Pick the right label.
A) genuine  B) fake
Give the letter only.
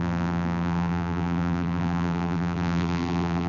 B